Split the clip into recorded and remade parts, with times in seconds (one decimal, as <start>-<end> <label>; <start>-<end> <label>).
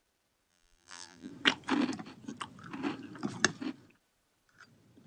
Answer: 0.0-0.5 recorded; 0.5-1.3 remade; 1.3-5.1 recorded